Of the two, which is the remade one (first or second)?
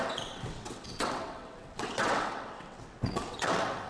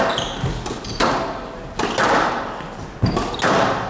first